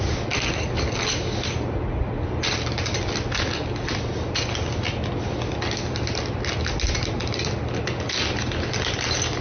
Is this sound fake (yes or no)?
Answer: no